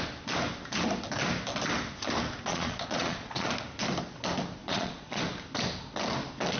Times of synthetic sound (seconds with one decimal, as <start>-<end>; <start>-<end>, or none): 2.5-3.5; 4.6-5.2